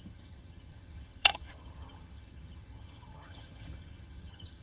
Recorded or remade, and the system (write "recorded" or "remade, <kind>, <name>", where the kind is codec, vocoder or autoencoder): remade, vocoder, HiFi-GAN